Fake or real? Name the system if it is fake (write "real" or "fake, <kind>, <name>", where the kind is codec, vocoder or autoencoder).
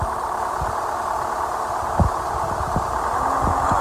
real